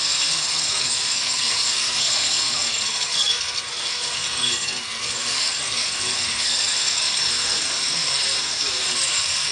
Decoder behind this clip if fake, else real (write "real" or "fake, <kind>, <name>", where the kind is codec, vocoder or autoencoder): fake, codec, SNAC